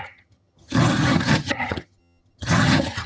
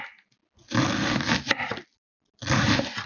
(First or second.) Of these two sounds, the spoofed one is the first